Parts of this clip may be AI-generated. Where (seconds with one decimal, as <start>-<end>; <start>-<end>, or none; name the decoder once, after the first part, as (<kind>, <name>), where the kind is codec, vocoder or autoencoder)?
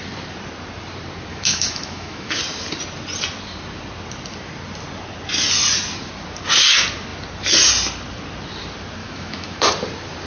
1.3-2.4 (autoencoder, DAC-VAE); 9.0-9.7